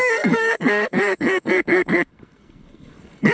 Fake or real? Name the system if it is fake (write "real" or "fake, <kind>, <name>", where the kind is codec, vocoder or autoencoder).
fake, codec, SNAC